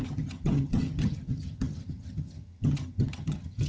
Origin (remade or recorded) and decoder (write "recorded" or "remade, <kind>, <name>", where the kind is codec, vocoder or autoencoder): remade, vocoder, HiFi-GAN